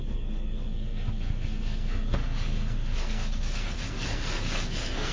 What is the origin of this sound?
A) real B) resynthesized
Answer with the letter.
B